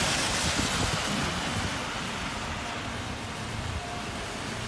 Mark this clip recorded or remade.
recorded